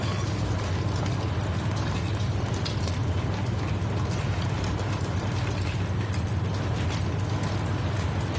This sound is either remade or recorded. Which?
recorded